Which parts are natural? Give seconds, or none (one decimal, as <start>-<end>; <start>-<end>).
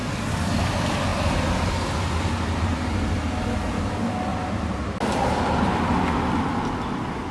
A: 0.0-7.3